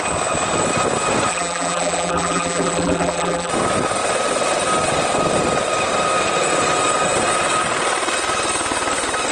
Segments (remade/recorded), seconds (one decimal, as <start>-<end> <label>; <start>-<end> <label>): 0.0-1.3 recorded; 1.3-3.5 remade; 3.5-9.3 recorded